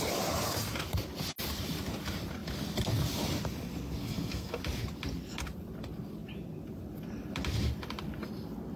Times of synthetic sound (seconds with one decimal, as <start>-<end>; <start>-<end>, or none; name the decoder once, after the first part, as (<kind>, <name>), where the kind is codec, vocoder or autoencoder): 4.0-4.6 (codec, SNAC)